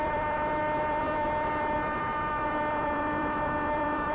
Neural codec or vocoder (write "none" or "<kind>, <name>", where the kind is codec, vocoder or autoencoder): vocoder, BigVGAN v2